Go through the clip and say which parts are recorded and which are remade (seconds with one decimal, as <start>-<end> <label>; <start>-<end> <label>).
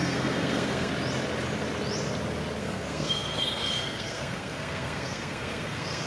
0.0-0.9 remade; 0.9-2.6 recorded; 2.6-6.1 remade